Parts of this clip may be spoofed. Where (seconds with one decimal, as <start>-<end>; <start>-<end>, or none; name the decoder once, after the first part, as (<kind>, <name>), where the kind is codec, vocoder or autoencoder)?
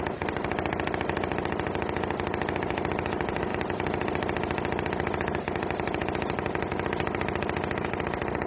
none